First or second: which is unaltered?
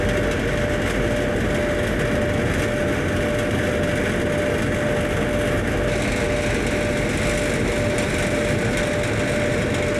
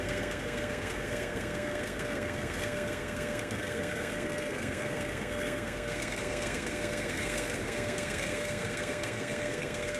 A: first